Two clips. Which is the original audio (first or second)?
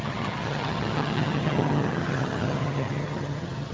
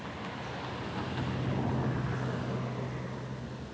second